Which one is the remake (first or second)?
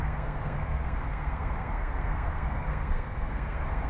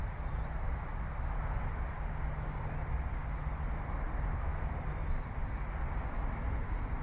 first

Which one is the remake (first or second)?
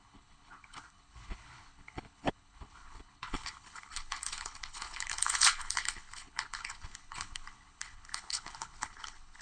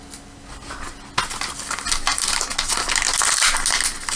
first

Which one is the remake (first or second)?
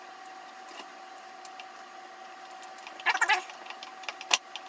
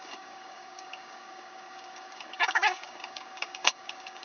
second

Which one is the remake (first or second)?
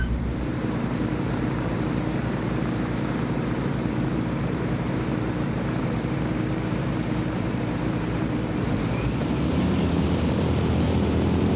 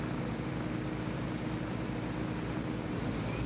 first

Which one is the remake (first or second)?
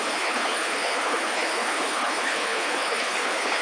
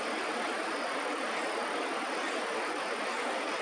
first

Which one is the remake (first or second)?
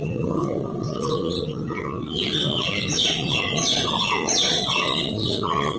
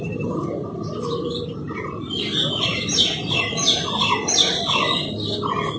first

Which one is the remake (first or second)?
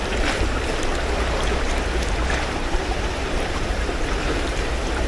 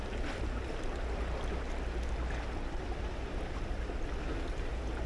first